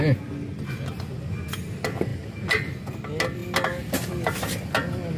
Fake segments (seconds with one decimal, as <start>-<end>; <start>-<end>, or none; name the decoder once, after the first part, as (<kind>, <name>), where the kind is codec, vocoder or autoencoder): none